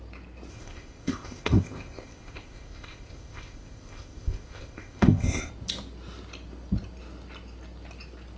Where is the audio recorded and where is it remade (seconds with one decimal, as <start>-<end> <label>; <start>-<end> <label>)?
0.0-0.5 recorded; 0.5-5.5 remade; 5.5-8.4 recorded